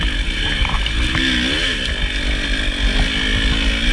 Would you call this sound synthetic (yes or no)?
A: no